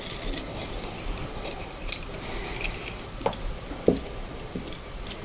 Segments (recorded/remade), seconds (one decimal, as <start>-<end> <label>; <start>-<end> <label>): 0.0-5.2 recorded